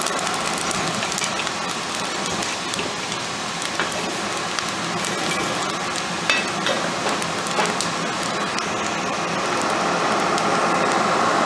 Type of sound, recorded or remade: recorded